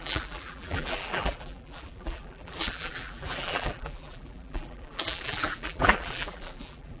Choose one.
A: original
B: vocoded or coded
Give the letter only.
B